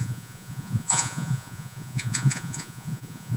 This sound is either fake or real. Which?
fake